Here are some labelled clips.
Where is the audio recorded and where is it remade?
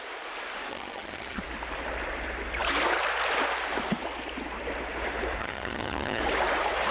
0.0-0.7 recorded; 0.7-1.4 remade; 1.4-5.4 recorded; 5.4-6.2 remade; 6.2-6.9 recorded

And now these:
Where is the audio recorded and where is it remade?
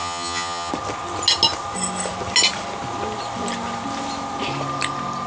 0.0-0.7 remade; 0.7-5.3 recorded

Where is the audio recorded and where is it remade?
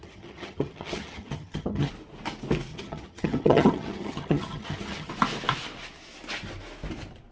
0.0-1.9 remade; 1.9-2.7 recorded; 2.7-5.1 remade; 5.1-7.3 recorded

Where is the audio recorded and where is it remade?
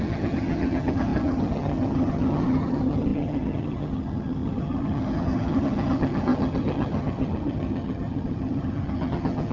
0.0-9.5 remade